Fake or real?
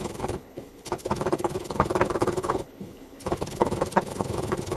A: fake